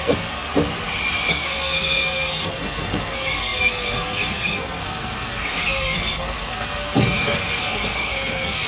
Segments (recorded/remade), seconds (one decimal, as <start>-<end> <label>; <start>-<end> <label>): 0.0-0.5 remade; 0.5-1.3 recorded; 1.3-8.7 remade